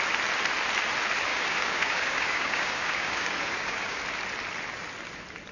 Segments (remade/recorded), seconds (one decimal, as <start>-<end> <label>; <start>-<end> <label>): 0.0-1.3 recorded; 1.3-4.0 remade; 4.0-5.5 recorded